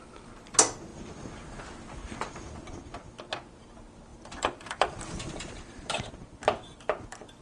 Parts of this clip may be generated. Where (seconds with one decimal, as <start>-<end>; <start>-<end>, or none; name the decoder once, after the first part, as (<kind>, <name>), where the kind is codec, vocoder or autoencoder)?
4.1-6.1 (vocoder, BigVGAN v2)